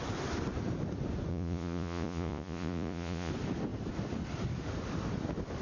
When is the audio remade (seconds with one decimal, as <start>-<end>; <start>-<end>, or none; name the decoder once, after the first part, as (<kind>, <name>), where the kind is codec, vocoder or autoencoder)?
1.3-3.3 (vocoder, Vocos)

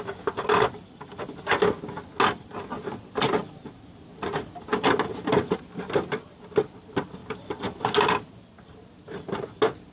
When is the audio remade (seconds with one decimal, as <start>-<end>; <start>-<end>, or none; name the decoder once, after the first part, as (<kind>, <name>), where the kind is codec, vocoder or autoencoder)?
none